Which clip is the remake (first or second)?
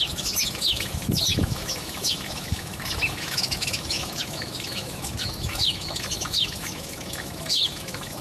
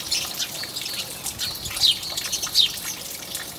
first